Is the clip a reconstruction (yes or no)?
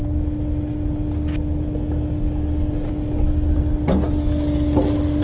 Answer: no